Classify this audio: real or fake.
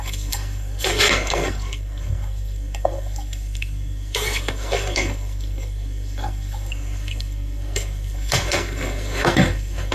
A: fake